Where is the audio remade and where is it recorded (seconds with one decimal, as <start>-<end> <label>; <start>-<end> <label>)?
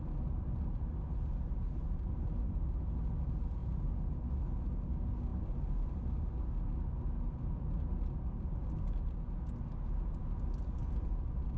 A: 0.0-11.6 recorded